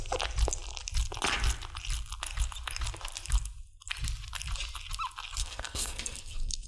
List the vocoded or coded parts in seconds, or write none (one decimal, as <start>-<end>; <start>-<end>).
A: 5.4-6.7